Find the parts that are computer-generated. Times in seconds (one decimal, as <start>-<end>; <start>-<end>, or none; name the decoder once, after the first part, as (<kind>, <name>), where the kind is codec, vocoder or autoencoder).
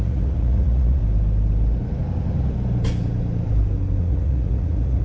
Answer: 0.0-1.0 (vocoder, Vocos); 4.0-5.0